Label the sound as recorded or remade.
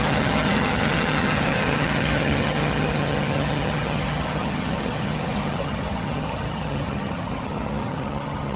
remade